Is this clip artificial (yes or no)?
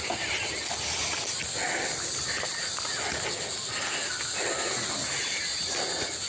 no